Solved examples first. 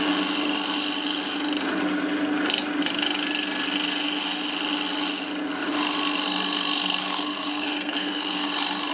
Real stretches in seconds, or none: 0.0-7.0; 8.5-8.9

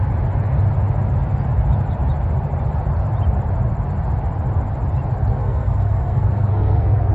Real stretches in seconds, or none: 0.0-5.3